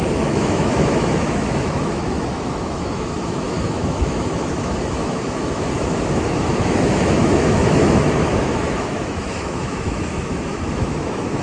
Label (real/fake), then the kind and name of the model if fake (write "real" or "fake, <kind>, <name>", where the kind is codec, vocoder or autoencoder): fake, autoencoder, DAC-VAE